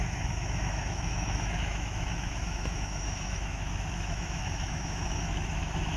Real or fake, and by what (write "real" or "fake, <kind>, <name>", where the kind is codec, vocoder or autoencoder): fake, autoencoder, DAC-VAE